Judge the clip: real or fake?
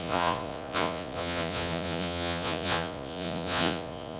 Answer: fake